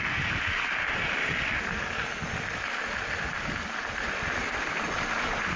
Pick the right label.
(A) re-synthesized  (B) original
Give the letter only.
B